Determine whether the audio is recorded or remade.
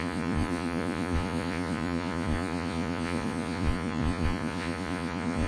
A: remade